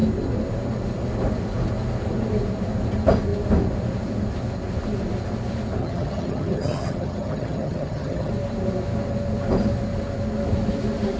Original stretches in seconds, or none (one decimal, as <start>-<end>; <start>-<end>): 0.0-5.8; 8.3-11.2